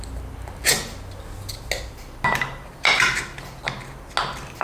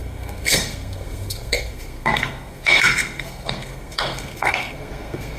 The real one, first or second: first